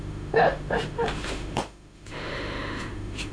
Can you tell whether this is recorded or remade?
remade